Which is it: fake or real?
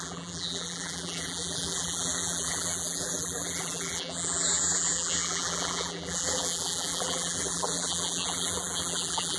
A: fake